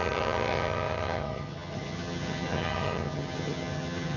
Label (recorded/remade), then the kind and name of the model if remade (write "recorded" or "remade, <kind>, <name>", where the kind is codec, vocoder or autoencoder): remade, vocoder, HiFi-GAN